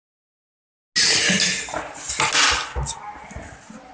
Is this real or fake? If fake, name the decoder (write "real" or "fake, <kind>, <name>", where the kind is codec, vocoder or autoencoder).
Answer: real